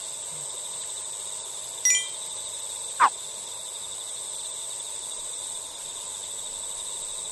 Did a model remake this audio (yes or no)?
no